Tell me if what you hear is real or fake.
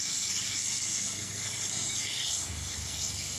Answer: fake